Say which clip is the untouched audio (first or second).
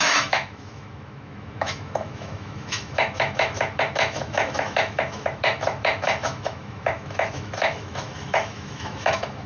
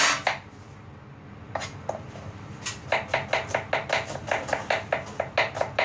second